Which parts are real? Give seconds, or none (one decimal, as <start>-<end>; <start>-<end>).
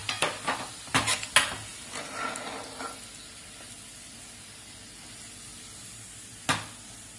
0.0-7.2